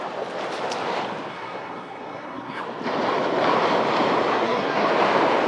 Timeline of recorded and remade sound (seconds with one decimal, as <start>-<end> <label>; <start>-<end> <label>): 0.0-1.3 recorded; 1.3-2.6 remade; 2.6-4.3 recorded; 4.3-4.9 remade; 4.9-5.5 recorded